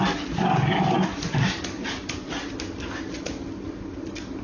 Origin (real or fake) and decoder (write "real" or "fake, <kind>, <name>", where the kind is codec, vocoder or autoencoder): real